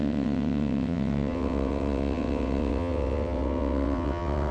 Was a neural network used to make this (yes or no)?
yes